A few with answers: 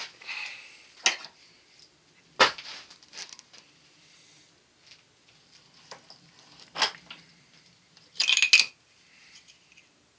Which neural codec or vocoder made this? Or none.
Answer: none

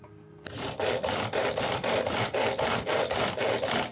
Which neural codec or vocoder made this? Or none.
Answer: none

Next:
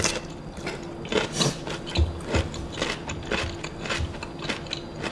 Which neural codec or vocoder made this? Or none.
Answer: none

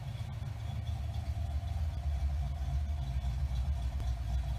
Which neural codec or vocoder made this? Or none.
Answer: none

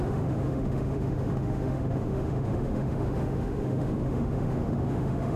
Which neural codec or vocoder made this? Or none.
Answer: autoencoder, DAC-VAE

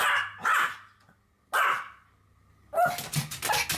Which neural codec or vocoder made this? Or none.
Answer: none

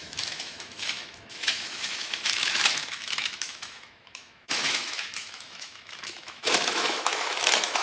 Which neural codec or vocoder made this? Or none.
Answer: autoencoder, DAC-VAE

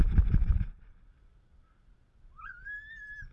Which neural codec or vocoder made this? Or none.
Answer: none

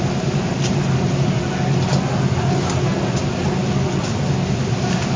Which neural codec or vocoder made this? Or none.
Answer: none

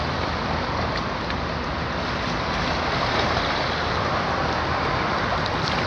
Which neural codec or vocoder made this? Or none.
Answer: none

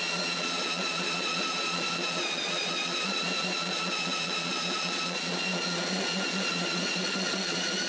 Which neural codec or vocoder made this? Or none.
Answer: vocoder, Vocos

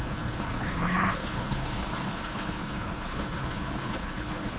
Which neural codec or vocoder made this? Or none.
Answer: codec, HILCodec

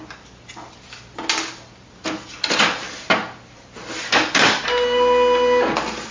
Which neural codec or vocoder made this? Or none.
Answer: none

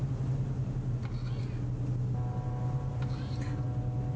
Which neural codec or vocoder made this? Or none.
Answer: none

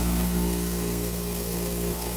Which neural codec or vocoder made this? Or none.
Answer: codec, SNAC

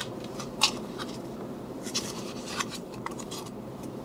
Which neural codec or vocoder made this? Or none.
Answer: vocoder, BigVGAN v2